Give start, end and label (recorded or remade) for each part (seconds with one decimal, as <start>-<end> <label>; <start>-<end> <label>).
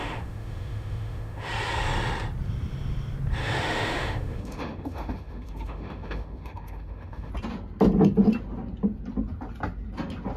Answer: 0.0-1.5 remade; 1.5-3.4 recorded; 3.4-7.3 remade; 7.3-10.4 recorded